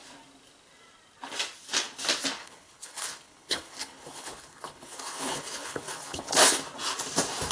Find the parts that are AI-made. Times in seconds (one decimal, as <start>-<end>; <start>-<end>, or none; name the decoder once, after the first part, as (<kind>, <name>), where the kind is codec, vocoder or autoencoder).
2.4-6.6 (codec, HILCodec)